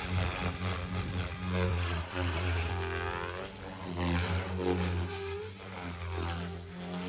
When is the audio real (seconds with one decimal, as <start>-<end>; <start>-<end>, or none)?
0.0-1.7; 2.7-7.1